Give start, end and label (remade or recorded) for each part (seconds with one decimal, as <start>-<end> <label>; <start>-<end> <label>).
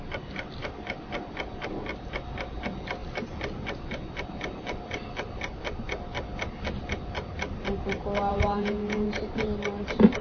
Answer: 0.0-8.3 recorded; 8.3-9.3 remade; 9.3-10.2 recorded